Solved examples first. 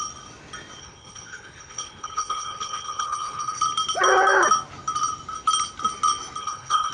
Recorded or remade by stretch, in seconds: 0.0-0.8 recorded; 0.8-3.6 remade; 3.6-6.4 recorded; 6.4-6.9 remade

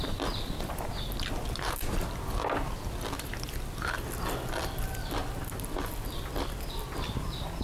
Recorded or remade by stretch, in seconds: 0.0-7.6 recorded

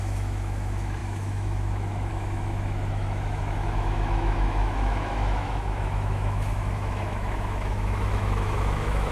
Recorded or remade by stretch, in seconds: 0.0-9.1 remade

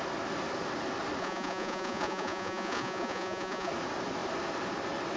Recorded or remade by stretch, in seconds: 0.0-1.2 recorded; 1.2-3.7 remade; 3.7-5.2 recorded

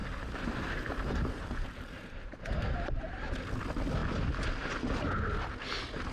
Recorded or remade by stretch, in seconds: 0.0-3.4 remade; 3.4-6.1 recorded

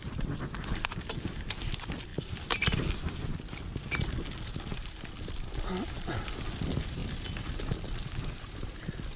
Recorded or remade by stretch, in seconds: 0.0-9.2 recorded

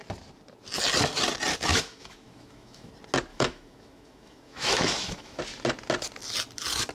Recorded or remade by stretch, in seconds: 0.0-1.7 recorded; 1.7-2.9 remade; 2.9-3.3 recorded; 3.3-5.4 remade; 5.4-6.9 recorded

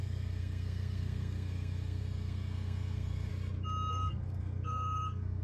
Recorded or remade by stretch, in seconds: 0.0-3.3 remade; 3.3-3.9 recorded; 3.9-5.4 remade